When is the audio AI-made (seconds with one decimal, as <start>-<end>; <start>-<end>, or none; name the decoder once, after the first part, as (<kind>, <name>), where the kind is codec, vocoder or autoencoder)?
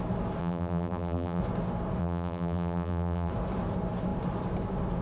0.4-1.4 (vocoder, BigVGAN v2); 2.0-3.3